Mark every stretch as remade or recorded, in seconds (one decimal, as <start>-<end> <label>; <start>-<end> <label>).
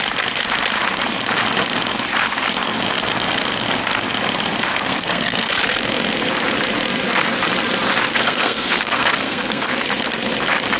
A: 0.0-4.7 recorded; 4.7-5.5 remade; 5.5-8.1 recorded; 8.1-9.7 remade; 9.7-10.8 recorded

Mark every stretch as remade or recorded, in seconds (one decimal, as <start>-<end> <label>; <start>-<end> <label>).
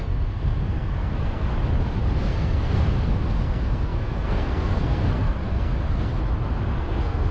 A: 0.0-1.5 remade; 1.5-2.2 recorded; 2.2-6.1 remade; 6.1-6.7 recorded; 6.7-7.3 remade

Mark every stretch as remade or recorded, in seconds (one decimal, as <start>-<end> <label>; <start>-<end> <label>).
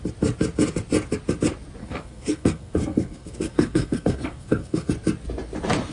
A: 0.0-1.8 recorded; 1.8-4.9 remade; 4.9-5.9 recorded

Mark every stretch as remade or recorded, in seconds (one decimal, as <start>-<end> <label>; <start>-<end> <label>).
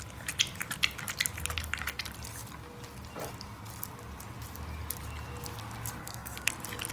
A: 0.0-6.0 recorded; 6.0-6.5 remade; 6.5-6.9 recorded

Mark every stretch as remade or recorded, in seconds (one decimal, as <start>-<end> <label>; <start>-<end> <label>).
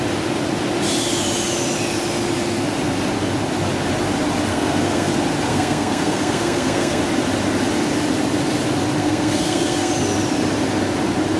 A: 0.0-4.5 recorded; 4.5-5.1 remade; 5.1-5.5 recorded; 5.5-7.0 remade; 7.0-9.0 recorded; 9.0-9.9 remade; 9.9-11.4 recorded